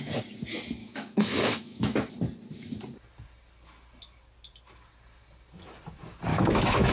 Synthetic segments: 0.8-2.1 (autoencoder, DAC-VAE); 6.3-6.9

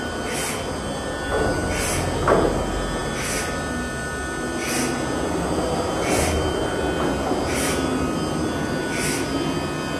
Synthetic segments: none

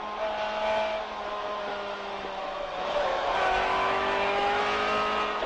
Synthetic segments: 1.7-4.6 (autoencoder, DAC-VAE)